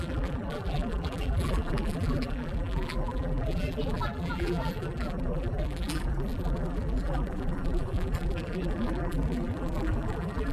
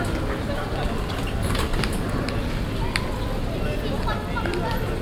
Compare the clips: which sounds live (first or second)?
second